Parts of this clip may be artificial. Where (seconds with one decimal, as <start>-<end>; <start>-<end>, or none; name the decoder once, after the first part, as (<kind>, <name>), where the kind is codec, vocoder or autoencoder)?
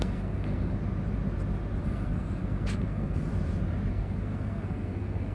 0.0-0.8 (codec, SNAC); 1.8-3.3; 3.9-5.3